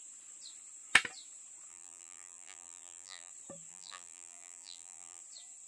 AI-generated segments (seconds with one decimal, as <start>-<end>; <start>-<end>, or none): 1.7-3.3; 3.7-5.2